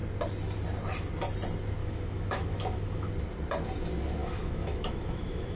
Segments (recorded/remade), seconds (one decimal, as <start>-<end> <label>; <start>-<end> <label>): 0.0-1.8 recorded; 1.8-3.1 remade; 3.1-4.2 recorded; 4.2-5.6 remade